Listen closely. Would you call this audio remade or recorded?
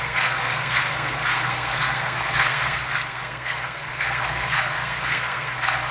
remade